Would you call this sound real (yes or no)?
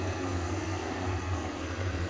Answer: no